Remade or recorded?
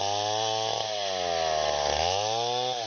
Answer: recorded